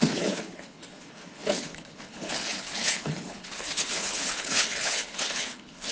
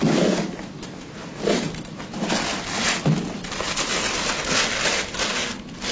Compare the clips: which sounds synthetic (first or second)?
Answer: first